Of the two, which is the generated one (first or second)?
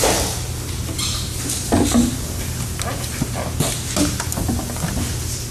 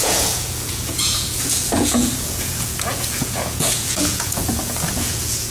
second